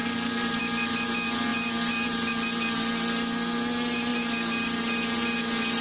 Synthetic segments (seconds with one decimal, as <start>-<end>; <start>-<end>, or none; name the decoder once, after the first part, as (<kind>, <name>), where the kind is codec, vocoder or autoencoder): 0.0-0.6 (vocoder, BigVGAN v2)